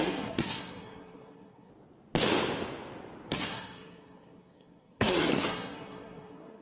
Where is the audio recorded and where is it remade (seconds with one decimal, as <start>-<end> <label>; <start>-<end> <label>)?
0.0-1.7 remade; 1.7-3.3 recorded; 3.3-6.6 remade